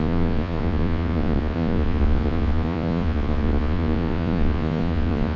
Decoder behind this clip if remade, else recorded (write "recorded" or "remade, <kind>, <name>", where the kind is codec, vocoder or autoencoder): remade, vocoder, Vocos